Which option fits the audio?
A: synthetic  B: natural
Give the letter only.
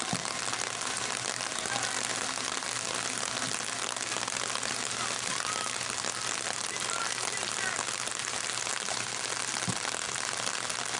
B